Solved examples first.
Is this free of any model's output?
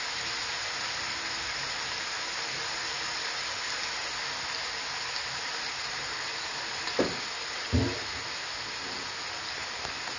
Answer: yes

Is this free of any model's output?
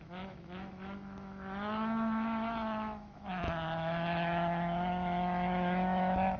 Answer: no